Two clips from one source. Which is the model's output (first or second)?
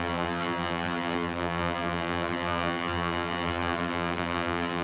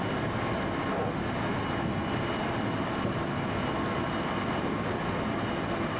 first